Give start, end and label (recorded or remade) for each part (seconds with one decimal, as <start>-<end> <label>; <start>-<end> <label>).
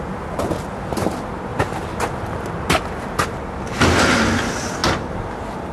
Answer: 0.0-5.7 recorded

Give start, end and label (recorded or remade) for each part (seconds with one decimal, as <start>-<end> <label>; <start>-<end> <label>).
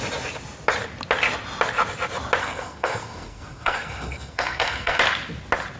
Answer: 0.0-2.4 recorded; 2.4-5.0 remade; 5.0-5.8 recorded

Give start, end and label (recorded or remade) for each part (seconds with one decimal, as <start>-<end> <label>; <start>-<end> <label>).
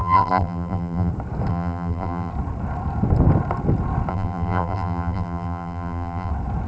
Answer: 0.0-1.1 remade; 1.1-1.5 recorded; 1.5-2.3 remade; 2.3-4.1 recorded; 4.1-6.3 remade; 6.3-6.7 recorded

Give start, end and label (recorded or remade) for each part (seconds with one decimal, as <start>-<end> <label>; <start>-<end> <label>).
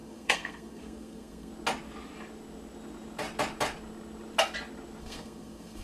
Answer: 0.0-1.5 remade; 1.5-5.0 recorded; 5.0-5.8 remade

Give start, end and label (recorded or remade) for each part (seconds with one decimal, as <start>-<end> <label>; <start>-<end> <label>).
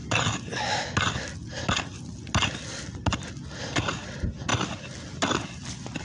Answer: 0.0-6.0 recorded